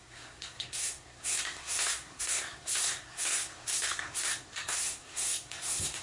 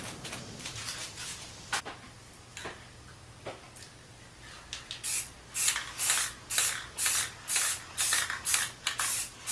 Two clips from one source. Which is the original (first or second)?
second